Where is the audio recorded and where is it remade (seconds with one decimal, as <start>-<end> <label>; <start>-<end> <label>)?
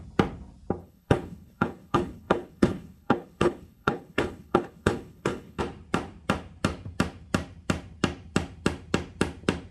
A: 0.0-0.8 recorded; 0.8-5.6 remade; 5.6-9.7 recorded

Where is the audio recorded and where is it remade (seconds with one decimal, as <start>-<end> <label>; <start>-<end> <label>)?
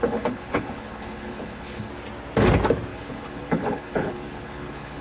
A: 0.0-1.9 remade; 1.9-2.9 recorded; 2.9-5.0 remade